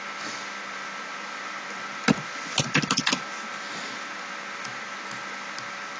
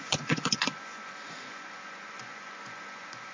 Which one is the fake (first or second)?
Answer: second